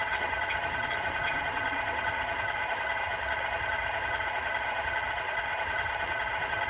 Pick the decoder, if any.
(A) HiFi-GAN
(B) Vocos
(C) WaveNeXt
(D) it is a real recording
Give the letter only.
A